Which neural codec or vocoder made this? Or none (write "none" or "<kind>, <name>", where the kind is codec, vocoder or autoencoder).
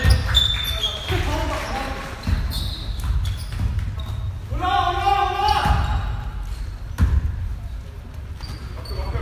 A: none